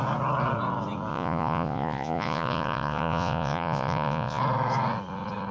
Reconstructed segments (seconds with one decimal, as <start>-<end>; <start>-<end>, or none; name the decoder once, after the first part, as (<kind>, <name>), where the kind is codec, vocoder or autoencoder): 1.1-4.4 (vocoder, Vocos)